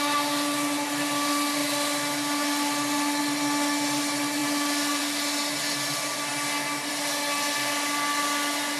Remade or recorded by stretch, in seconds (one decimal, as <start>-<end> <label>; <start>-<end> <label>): 0.0-8.8 recorded